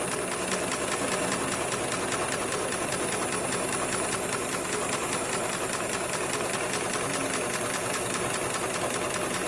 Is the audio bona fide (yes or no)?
yes